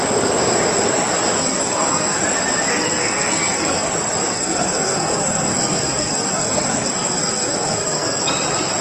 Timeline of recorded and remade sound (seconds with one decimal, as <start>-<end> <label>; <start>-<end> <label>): 0.0-1.4 recorded; 1.4-2.2 remade; 2.2-2.7 recorded; 2.7-3.9 remade; 3.9-4.3 recorded; 4.3-8.3 remade; 8.3-8.8 recorded